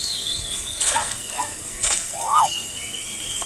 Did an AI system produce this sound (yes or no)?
yes